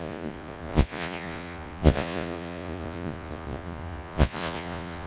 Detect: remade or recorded remade